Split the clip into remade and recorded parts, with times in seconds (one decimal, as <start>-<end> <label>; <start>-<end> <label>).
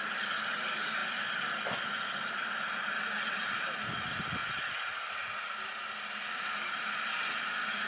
0.0-7.9 recorded